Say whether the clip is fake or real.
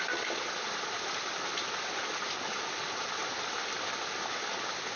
real